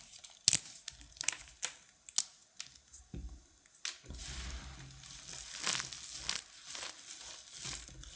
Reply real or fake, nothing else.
real